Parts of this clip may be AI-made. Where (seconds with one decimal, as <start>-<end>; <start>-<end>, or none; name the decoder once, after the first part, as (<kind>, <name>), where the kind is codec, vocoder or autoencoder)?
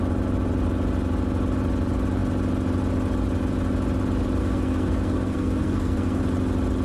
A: 4.4-6.2 (codec, SNAC)